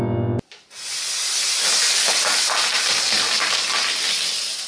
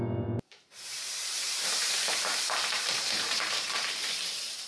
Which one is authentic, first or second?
first